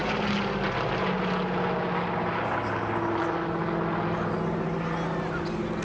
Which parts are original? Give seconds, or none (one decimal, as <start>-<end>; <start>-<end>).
0.0-5.8